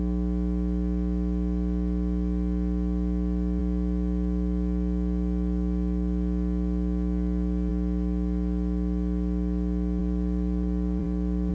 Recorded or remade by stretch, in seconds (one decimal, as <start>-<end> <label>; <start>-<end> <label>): 0.0-10.0 recorded; 10.0-11.5 remade